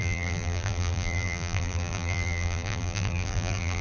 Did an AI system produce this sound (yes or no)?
yes